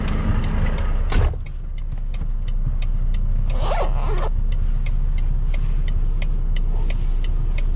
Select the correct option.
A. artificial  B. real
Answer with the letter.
B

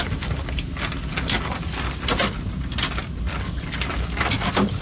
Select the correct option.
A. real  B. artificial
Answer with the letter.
A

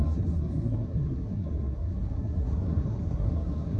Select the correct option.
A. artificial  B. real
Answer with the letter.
A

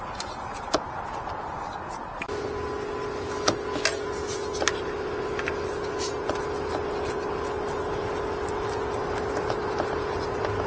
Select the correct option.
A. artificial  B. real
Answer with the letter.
B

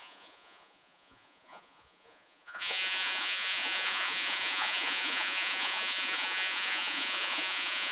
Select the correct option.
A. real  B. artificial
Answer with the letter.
B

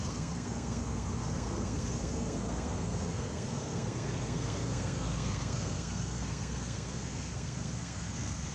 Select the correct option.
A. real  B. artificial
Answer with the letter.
B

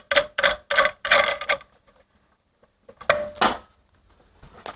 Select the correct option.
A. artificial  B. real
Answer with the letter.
B